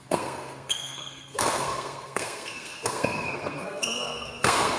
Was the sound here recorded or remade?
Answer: remade